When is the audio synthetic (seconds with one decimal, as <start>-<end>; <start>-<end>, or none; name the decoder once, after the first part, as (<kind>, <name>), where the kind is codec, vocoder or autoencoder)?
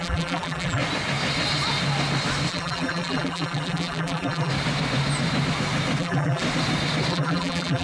0.0-0.8 (vocoder, BigVGAN v2); 2.5-4.5; 6.0-6.4; 7.1-7.8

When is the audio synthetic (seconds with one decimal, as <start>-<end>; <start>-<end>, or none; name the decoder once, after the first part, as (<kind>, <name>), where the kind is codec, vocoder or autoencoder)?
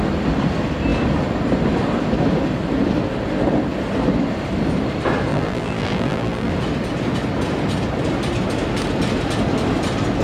5.3-6.5 (vocoder, BigVGAN v2)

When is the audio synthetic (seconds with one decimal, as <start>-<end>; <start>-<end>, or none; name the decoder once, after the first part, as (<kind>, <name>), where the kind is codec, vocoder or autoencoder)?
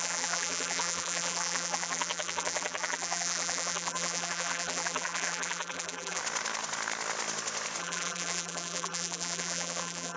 0.0-6.2 (vocoder, BigVGAN v2); 7.8-10.2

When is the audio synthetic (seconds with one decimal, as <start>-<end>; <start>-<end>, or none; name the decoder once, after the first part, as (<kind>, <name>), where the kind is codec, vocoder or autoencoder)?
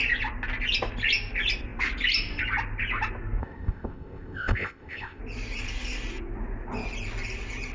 3.4-5.2 (codec, ZipCodec)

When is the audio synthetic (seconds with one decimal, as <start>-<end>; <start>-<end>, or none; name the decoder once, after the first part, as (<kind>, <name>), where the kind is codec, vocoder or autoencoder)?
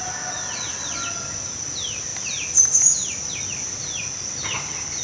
none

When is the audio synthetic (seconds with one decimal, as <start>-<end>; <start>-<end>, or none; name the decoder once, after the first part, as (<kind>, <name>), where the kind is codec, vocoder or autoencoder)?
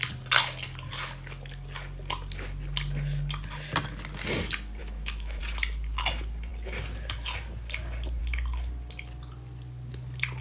4.8-5.4 (autoencoder, DAC-VAE)